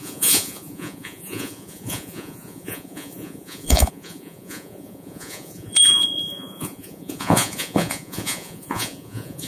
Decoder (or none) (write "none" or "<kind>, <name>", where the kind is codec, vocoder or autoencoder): vocoder, Vocos